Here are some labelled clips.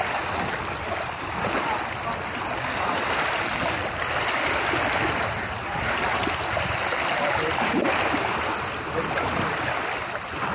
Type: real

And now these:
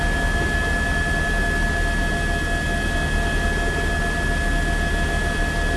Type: real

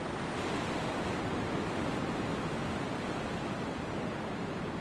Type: real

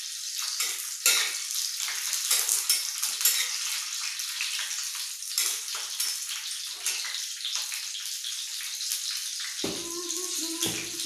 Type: real